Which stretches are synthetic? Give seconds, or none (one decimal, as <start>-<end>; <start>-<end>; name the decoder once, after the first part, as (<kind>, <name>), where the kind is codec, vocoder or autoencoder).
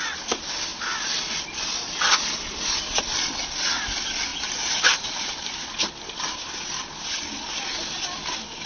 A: 4.3-5.9 (vocoder, BigVGAN v2)